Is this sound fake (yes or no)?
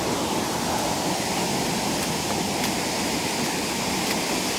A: yes